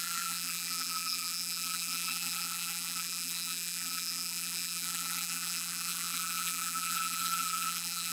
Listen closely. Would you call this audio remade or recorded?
remade